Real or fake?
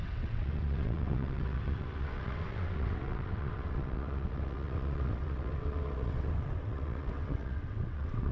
fake